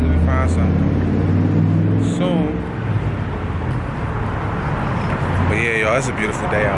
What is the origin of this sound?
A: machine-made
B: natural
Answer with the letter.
B